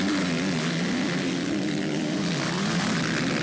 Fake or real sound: real